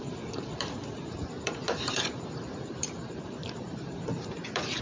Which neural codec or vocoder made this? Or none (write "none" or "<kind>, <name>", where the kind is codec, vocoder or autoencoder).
vocoder, BigVGAN v2